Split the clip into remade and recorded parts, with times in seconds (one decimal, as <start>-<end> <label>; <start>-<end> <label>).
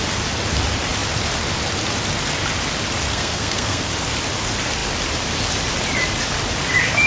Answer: 0.0-3.1 recorded; 3.1-3.9 remade; 3.9-7.1 recorded